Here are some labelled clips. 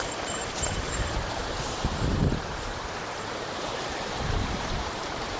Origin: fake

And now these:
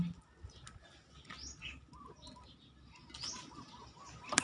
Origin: real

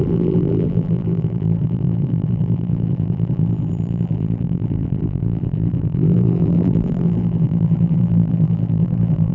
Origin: fake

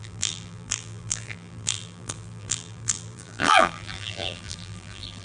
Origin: fake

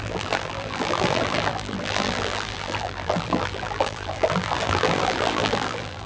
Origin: fake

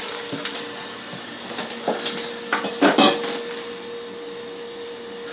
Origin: fake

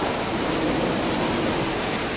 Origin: fake